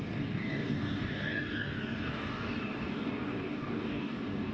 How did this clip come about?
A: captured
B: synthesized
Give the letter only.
B